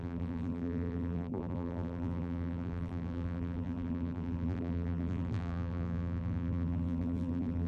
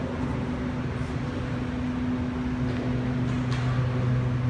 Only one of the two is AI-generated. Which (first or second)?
first